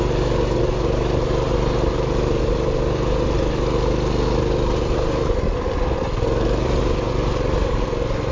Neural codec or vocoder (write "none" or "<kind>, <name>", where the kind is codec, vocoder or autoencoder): none